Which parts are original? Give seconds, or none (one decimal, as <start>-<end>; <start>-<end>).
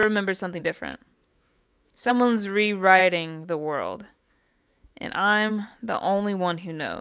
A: 0.6-1.3; 2.1-3.0; 5.5-7.0